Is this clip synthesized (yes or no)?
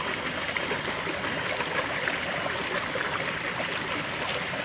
no